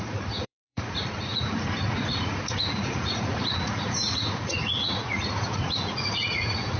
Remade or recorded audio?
remade